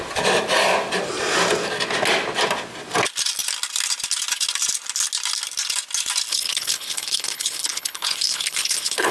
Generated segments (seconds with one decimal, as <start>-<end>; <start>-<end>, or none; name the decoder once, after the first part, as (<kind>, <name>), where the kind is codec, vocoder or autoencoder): 6.3-9.1 (codec, HILCodec)